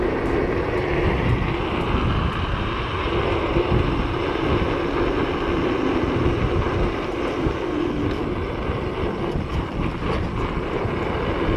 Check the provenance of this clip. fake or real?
real